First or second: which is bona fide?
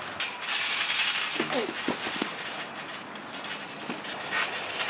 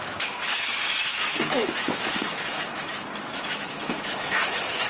first